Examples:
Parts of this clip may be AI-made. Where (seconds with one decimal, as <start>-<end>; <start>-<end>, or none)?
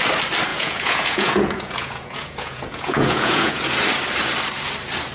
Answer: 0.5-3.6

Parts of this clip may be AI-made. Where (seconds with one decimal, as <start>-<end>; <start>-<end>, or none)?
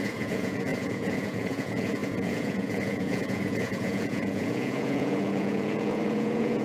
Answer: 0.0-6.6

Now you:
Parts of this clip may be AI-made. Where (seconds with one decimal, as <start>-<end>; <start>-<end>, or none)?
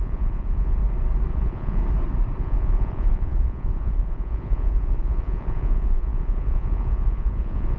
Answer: 0.0-0.8; 1.3-1.8; 2.4-7.8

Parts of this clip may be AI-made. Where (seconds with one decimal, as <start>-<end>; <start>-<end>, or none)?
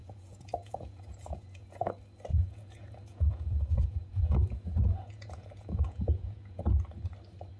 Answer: 0.0-1.9; 2.3-6.6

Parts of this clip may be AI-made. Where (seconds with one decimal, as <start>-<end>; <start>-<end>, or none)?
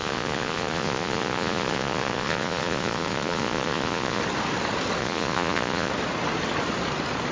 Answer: 0.0-4.2; 5.0-5.9